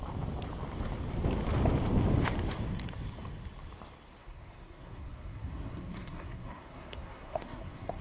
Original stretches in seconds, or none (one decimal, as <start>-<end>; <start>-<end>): 0.0-4.2